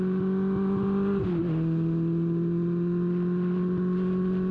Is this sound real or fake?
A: real